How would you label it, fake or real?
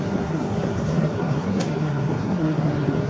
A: fake